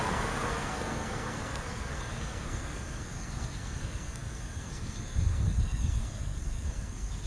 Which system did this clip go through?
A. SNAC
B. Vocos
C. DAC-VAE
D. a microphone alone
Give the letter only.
A